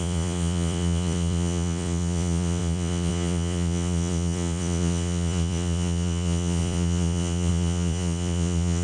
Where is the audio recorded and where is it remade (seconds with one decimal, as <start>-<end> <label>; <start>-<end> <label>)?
0.0-8.8 remade